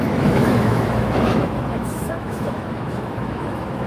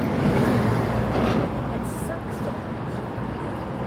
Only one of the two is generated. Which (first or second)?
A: first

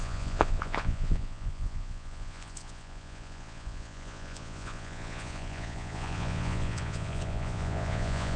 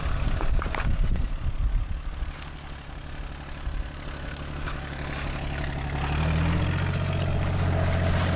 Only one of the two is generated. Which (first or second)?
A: first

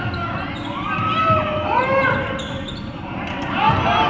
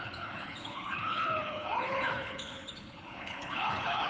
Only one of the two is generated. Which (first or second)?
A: second